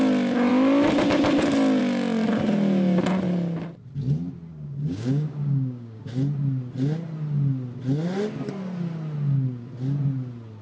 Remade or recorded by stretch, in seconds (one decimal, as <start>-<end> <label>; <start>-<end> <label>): 0.0-4.5 recorded; 4.5-6.0 remade; 6.0-10.6 recorded